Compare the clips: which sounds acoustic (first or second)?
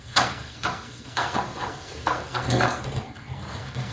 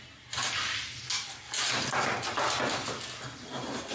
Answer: second